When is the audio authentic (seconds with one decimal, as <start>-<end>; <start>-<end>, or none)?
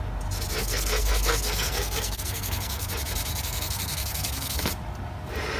0.0-0.6; 2.9-3.3; 4.7-5.6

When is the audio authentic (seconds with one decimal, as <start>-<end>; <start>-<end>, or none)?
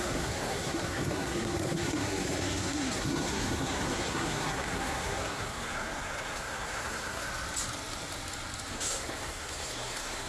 7.3-8.7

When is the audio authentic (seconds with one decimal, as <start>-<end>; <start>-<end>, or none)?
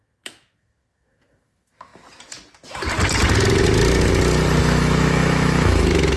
1.9-4.6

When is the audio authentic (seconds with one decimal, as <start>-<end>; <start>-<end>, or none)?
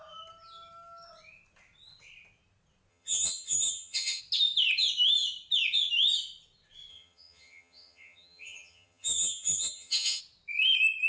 0.0-2.9; 4.2-6.9; 10.2-11.1